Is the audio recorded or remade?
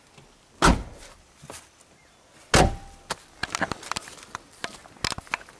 recorded